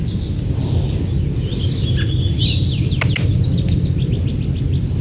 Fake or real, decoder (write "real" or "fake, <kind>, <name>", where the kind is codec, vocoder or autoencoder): real